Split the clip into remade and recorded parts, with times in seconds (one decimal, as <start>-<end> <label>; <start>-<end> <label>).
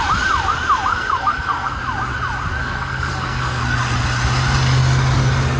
0.0-0.9 recorded; 0.9-1.8 remade; 1.8-2.6 recorded; 2.6-3.6 remade; 3.6-5.6 recorded